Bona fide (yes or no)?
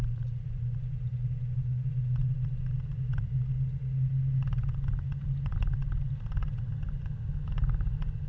yes